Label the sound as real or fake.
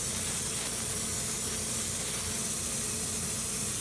real